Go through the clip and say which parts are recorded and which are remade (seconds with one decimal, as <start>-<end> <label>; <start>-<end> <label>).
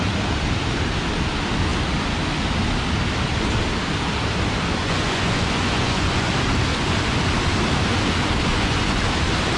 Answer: 0.0-4.8 recorded; 4.8-6.3 remade; 6.3-6.7 recorded; 6.7-7.2 remade; 7.2-8.5 recorded; 8.5-9.0 remade; 9.0-9.6 recorded